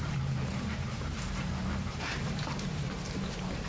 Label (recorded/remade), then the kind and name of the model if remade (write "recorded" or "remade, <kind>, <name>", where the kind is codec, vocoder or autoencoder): remade, vocoder, BigVGAN v2